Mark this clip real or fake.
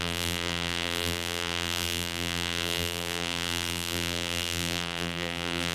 fake